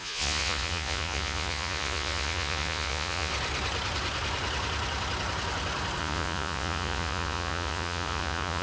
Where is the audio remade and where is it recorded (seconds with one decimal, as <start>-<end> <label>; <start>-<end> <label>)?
0.0-3.3 remade; 3.3-6.0 recorded; 6.0-8.6 remade